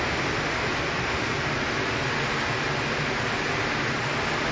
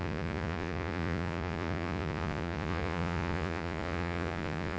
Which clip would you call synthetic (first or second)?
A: second